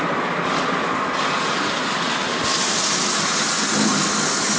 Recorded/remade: recorded